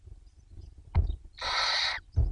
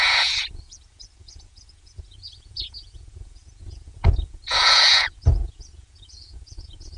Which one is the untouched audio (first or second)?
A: first